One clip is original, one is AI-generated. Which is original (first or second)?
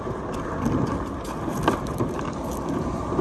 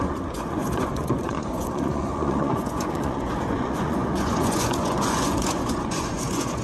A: first